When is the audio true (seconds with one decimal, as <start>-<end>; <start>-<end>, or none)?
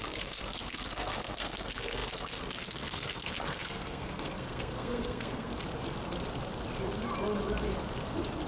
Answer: 5.5-8.5